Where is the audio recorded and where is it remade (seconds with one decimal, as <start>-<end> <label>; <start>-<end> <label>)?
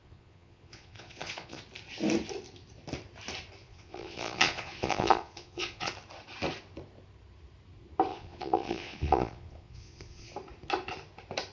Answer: 0.0-1.6 remade; 1.6-3.6 recorded; 3.6-5.9 remade; 5.9-8.1 recorded; 8.1-10.3 remade; 10.3-11.5 recorded